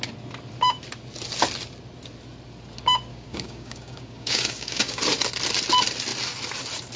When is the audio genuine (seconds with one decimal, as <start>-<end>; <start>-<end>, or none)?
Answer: 0.0-3.1; 5.0-7.0